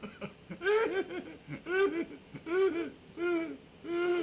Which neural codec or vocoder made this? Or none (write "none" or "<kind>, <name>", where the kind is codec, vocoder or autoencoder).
none